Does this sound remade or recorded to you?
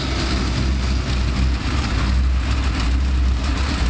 recorded